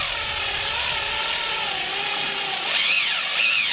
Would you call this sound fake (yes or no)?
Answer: no